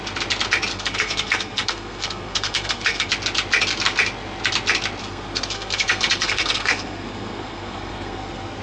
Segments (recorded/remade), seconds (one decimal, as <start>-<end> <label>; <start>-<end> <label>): 0.0-0.7 recorded; 0.7-3.1 remade; 3.1-5.0 recorded; 5.0-8.6 remade